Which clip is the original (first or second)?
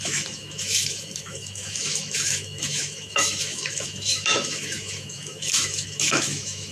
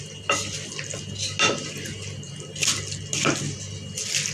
second